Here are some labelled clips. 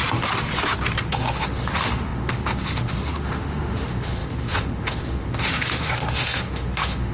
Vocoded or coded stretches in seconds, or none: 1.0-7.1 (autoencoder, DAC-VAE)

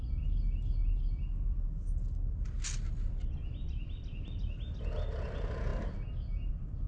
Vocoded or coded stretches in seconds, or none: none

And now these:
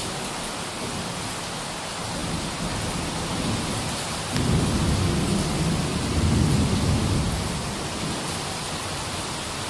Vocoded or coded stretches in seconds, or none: 5.9-6.7 (vocoder, BigVGAN v2)

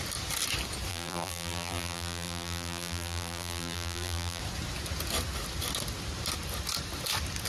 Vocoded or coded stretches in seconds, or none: 0.9-4.4 (vocoder, BigVGAN v2)

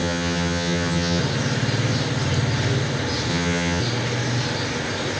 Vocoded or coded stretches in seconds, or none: 0.0-1.2 (vocoder, HiFi-GAN); 3.3-3.8

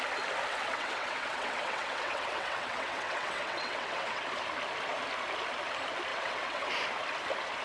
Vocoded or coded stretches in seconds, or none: 0.5-4.2 (vocoder, WaveNeXt); 6.1-6.7

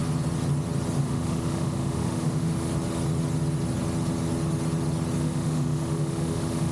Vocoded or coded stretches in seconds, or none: 1.0-2.7 (autoencoder, DAC-VAE); 5.2-6.7